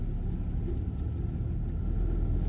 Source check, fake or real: real